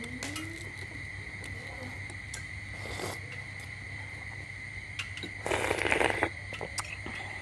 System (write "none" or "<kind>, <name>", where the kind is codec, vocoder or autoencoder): none